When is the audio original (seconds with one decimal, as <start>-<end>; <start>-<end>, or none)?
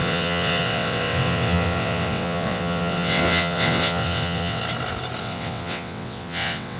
4.6-5.2